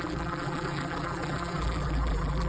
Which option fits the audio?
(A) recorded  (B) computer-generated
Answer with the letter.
B